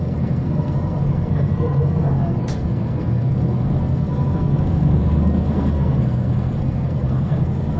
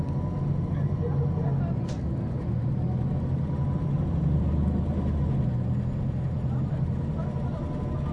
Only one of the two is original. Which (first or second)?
second